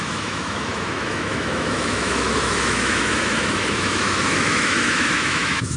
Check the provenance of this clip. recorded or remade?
remade